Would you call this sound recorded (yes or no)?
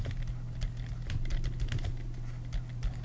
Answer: yes